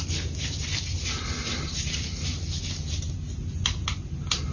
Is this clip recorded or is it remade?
recorded